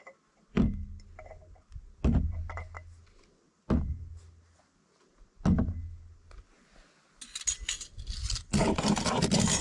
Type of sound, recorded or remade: recorded